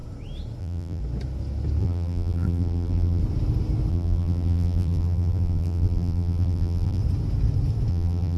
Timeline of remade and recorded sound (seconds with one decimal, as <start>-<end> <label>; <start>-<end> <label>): 0.0-0.6 recorded; 0.6-1.0 remade; 1.0-1.8 recorded; 1.8-3.2 remade; 3.2-3.9 recorded; 3.9-7.0 remade; 7.0-7.9 recorded; 7.9-8.4 remade